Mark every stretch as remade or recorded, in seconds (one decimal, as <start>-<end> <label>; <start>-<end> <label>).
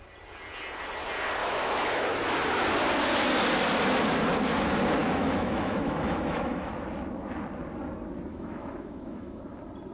0.0-1.4 recorded; 1.4-2.1 remade; 2.1-5.0 recorded; 5.0-6.7 remade; 6.7-8.3 recorded; 8.3-9.4 remade; 9.4-9.9 recorded